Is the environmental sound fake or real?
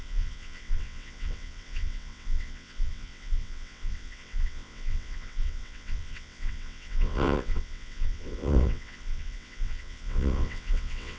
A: fake